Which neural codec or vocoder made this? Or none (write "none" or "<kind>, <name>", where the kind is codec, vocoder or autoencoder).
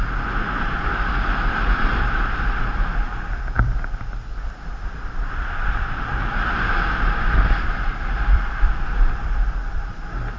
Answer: vocoder, BigVGAN v2